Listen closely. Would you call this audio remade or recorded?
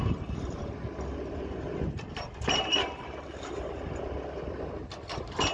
recorded